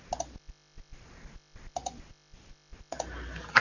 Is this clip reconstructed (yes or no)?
no